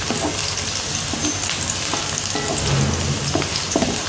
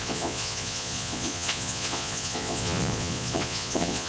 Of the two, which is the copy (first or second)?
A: second